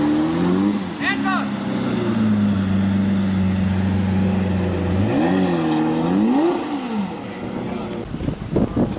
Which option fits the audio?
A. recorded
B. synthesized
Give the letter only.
A